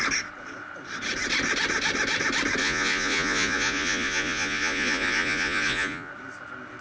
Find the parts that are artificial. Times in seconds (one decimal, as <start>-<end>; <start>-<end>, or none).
2.6-6.1